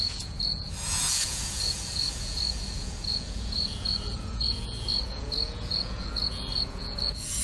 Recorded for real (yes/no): no